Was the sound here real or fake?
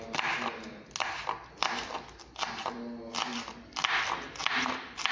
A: real